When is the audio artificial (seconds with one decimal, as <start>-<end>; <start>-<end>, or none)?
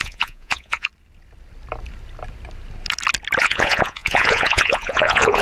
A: 0.0-0.9; 3.4-5.4